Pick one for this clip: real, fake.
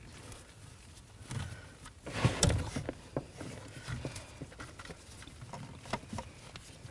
real